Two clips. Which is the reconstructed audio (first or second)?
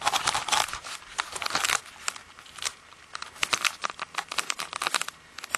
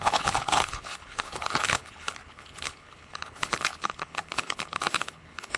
second